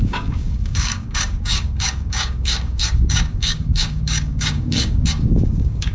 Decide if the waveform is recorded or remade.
remade